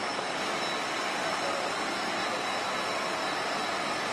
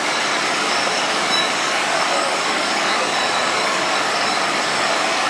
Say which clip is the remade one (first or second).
second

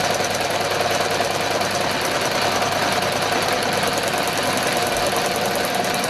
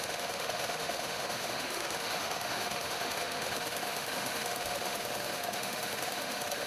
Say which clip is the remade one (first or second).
second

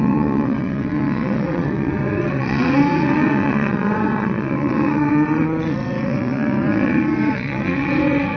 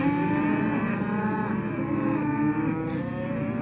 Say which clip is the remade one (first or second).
first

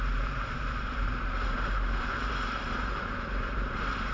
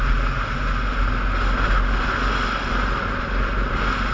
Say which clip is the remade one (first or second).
first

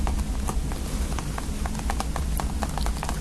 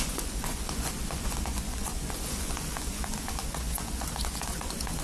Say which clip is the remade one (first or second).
second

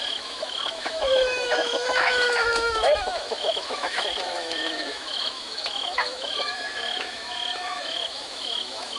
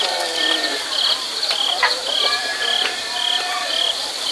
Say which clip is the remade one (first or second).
first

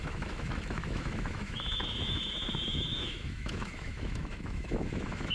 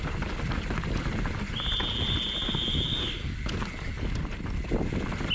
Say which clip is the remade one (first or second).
first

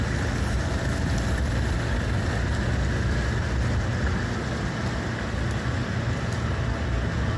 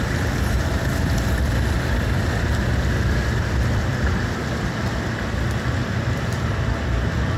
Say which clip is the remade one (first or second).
second